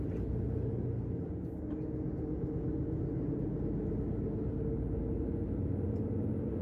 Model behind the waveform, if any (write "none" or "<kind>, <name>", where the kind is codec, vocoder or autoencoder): none